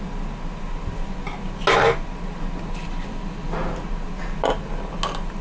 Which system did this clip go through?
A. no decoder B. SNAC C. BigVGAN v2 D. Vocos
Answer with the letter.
A